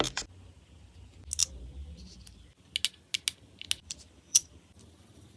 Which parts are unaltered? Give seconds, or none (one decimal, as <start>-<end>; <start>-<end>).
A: 0.0-3.8